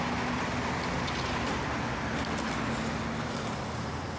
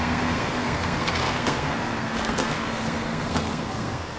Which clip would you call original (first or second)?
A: first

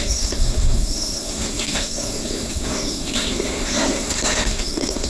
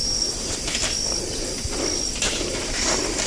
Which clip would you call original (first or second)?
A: second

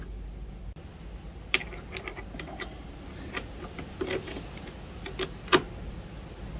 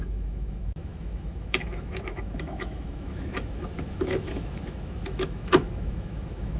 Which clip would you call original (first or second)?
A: first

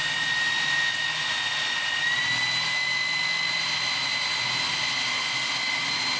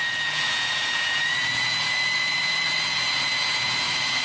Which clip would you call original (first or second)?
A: first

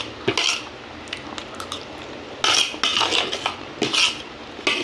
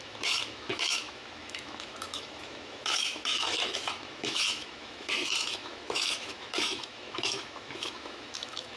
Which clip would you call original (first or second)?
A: first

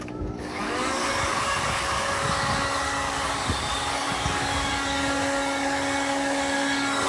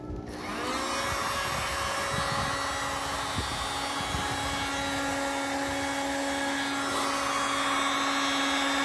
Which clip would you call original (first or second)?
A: second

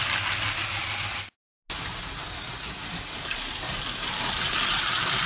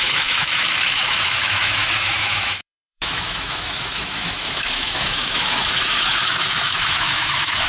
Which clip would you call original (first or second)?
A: first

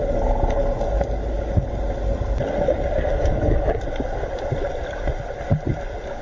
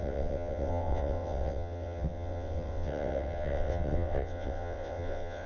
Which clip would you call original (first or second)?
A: first